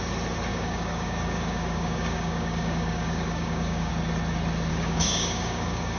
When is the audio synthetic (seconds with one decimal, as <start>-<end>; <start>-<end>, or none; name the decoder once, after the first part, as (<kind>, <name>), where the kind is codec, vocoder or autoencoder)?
0.5-3.9 (codec, DAC); 4.7-6.0